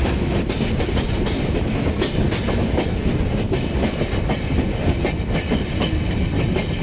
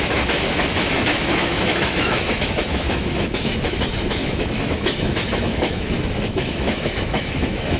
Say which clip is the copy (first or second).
second